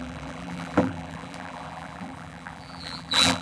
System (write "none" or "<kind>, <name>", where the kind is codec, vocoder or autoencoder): vocoder, BigVGAN v2